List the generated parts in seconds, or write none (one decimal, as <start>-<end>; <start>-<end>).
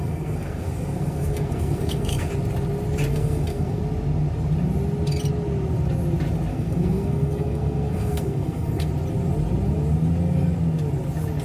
0.0-2.3; 3.1-3.8; 6.5-8.9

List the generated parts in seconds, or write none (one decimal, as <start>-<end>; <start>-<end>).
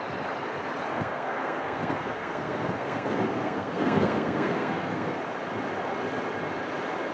0.9-5.2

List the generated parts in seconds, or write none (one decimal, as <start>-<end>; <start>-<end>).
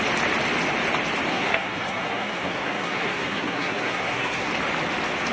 1.3-4.5